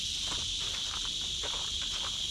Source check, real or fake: real